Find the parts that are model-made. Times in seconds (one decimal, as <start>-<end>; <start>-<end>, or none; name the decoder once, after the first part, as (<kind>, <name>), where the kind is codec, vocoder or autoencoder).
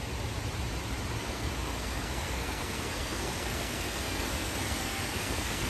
1.2-5.7 (codec, SNAC)